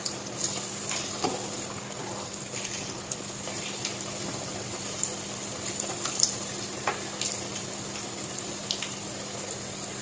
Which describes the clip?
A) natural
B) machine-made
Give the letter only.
A